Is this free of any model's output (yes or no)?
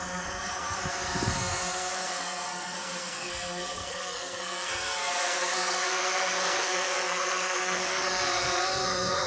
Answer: no